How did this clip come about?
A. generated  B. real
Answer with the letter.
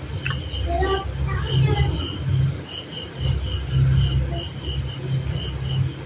B